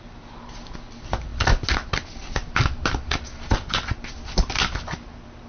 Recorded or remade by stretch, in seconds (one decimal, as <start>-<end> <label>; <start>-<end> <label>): 0.0-5.5 recorded